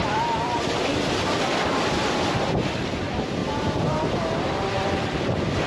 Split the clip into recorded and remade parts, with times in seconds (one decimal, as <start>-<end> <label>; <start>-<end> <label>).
0.0-5.7 remade